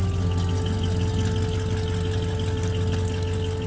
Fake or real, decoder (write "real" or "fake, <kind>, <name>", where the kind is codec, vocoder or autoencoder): real